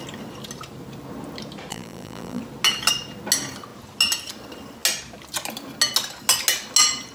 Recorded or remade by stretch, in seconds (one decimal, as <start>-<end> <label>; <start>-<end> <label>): 0.0-1.7 recorded; 1.7-2.4 remade; 2.4-7.1 recorded

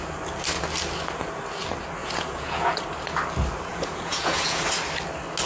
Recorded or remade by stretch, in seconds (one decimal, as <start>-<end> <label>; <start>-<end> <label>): 0.0-2.0 recorded; 2.0-2.8 remade; 2.8-3.7 recorded; 3.7-4.6 remade; 4.6-5.5 recorded

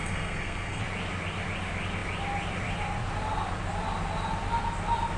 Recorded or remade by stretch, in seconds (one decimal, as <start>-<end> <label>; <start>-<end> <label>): 0.0-0.8 remade; 0.8-5.2 recorded

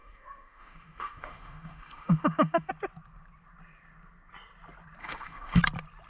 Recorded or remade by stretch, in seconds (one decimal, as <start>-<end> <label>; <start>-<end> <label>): 0.0-2.7 remade; 2.7-5.0 recorded; 5.0-5.6 remade; 5.6-6.1 recorded

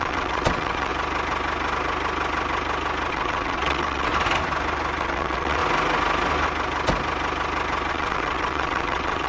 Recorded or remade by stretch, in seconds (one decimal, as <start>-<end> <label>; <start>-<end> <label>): 0.0-0.9 remade; 0.9-3.1 recorded; 3.1-4.1 remade; 4.1-5.0 recorded; 5.0-5.6 remade; 5.6-7.9 recorded; 7.9-9.3 remade

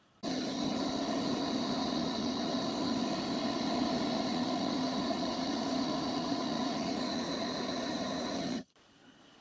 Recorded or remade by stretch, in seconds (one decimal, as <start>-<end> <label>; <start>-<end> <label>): 0.0-1.8 recorded; 1.8-2.5 remade; 2.5-4.3 recorded; 4.3-8.8 remade; 8.8-9.4 recorded

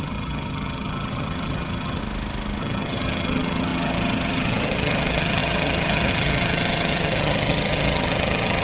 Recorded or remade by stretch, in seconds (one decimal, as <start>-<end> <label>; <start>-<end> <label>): 0.0-2.0 remade; 2.0-2.6 recorded; 2.6-8.6 remade

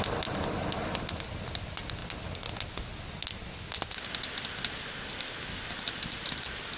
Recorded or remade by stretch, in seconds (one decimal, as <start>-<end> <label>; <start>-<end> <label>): 0.0-6.8 recorded